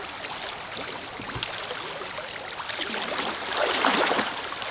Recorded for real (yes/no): yes